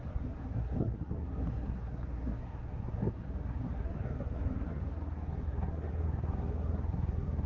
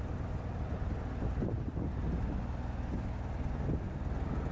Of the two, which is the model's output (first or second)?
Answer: first